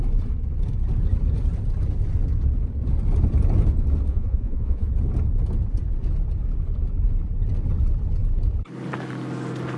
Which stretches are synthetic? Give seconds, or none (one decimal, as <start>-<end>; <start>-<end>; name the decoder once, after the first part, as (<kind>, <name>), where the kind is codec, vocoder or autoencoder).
4.1-4.9 (vocoder, Vocos)